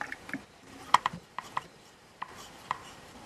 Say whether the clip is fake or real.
fake